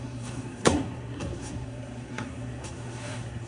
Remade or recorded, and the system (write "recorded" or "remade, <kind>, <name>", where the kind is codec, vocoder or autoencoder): remade, codec, SNAC